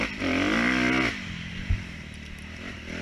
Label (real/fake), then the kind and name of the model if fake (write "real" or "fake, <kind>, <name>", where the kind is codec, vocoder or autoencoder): real